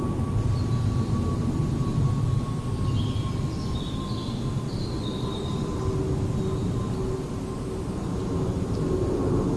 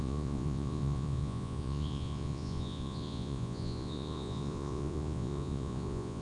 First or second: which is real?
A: first